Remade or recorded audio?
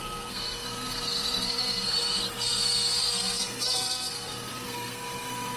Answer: remade